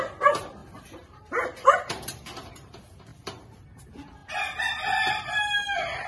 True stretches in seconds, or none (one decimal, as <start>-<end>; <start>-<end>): 0.0-0.6; 2.7-3.1; 3.8-6.1